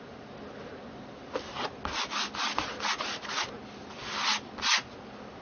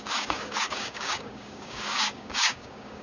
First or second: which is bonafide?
first